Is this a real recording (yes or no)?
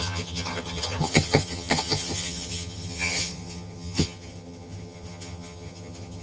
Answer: no